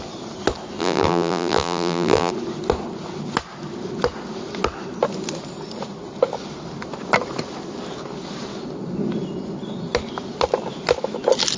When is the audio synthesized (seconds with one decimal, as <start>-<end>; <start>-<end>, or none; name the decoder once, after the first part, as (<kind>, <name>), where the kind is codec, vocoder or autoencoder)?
0.8-2.3 (vocoder, BigVGAN v2)

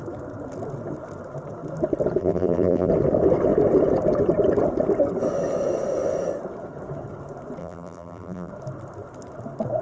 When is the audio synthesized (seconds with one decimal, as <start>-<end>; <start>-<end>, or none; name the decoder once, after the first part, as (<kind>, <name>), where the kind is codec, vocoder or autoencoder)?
2.2-2.9 (vocoder, BigVGAN v2); 7.6-8.5

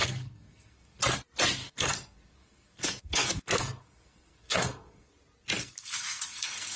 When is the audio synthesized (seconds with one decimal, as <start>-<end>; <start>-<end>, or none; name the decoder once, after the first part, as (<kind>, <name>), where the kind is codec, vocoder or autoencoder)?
0.0-1.0 (codec, SNAC); 1.6-5.1; 5.6-6.8

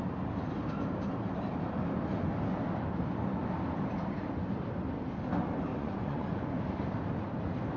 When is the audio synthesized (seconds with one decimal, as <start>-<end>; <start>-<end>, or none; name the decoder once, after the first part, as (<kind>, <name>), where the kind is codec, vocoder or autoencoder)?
5.7-6.6 (vocoder, Vocos)

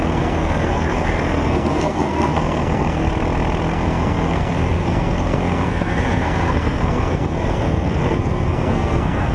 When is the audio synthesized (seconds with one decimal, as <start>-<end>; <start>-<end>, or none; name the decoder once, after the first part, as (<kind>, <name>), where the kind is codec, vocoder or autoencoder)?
0.0-3.1 (codec, SNAC); 3.7-9.3

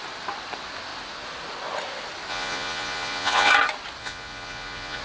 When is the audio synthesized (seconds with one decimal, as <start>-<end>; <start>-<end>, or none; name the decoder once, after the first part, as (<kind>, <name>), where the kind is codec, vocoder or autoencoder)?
2.3-3.5 (vocoder, Vocos); 4.0-5.0